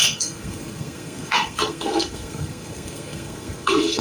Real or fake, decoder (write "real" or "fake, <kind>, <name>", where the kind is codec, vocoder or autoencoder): fake, codec, SNAC